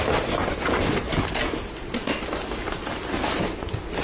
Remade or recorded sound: recorded